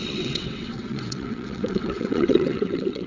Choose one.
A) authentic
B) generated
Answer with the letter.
B